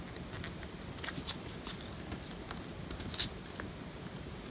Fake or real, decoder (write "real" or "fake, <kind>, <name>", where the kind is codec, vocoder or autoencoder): real